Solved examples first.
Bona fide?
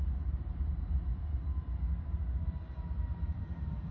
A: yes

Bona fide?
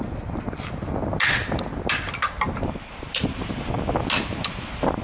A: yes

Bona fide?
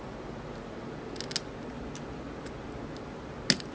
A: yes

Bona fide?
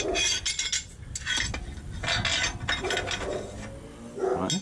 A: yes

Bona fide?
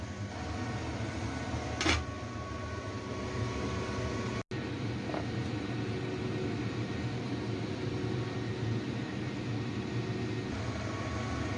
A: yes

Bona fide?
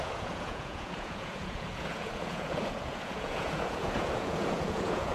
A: no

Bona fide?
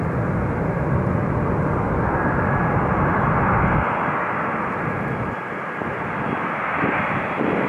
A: yes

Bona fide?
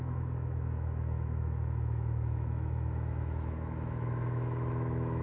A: no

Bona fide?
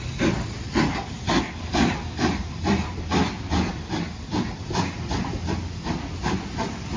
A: no